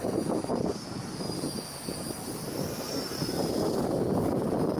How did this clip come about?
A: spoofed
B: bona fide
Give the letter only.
A